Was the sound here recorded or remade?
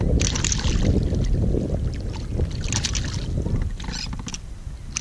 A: recorded